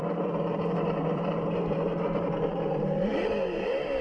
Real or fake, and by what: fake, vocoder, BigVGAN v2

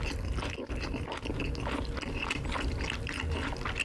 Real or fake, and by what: real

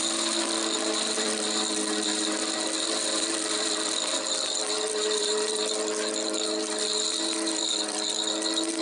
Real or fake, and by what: fake, vocoder, BigVGAN v2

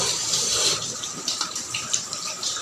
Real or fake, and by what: fake, vocoder, BigVGAN v2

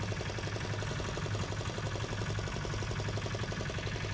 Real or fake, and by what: real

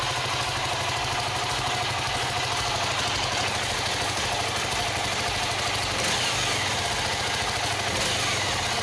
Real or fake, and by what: real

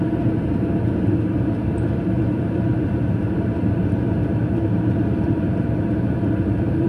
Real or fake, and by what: fake, vocoder, BigVGAN v2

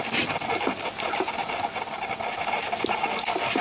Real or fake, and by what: real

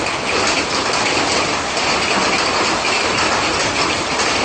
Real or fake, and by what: real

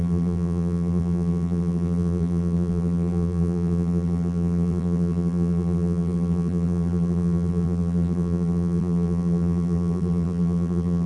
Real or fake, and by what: fake, vocoder, BigVGAN v2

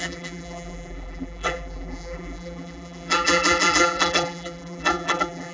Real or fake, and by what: fake, vocoder, BigVGAN v2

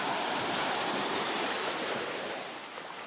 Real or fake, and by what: fake, vocoder, BigVGAN v2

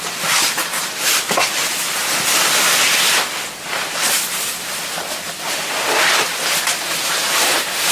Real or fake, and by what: fake, vocoder, BigVGAN v2